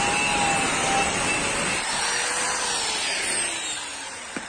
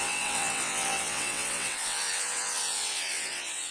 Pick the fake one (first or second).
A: second